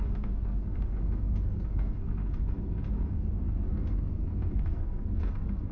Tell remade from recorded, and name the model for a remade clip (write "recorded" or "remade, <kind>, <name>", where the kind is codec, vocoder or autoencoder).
remade, codec, SNAC